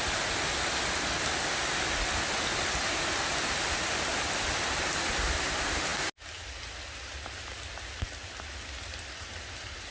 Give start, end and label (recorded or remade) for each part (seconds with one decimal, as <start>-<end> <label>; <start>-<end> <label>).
0.0-9.9 recorded